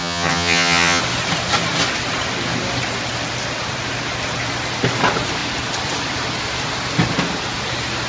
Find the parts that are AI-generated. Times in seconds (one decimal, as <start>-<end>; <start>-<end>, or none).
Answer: 0.0-1.0